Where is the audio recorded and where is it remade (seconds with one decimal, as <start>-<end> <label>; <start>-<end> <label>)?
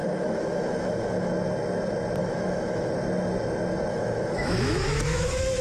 0.0-1.3 remade; 1.3-2.2 recorded; 2.2-2.9 remade; 2.9-3.9 recorded; 3.9-5.6 remade